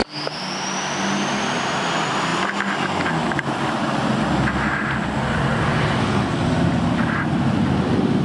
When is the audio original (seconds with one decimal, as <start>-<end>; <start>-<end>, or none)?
0.0-8.2